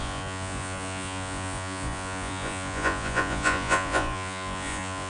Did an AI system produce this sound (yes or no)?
yes